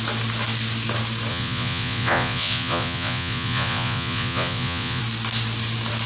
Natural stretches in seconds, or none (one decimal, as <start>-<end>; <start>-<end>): 0.0-1.3; 5.0-6.1